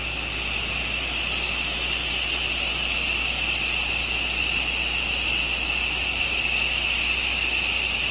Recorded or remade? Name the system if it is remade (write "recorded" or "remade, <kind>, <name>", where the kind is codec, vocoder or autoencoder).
recorded